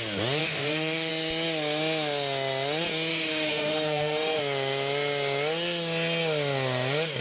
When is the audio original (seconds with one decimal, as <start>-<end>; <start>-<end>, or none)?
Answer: 0.0-0.4; 1.1-3.1; 4.4-7.2